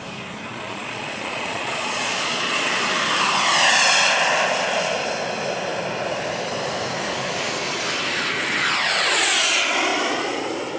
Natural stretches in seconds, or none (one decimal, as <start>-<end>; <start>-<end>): 0.0-0.5; 2.6-10.8